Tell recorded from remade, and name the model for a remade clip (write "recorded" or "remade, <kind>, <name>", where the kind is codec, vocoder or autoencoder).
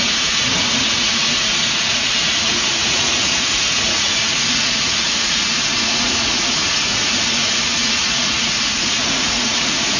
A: remade, vocoder, Vocos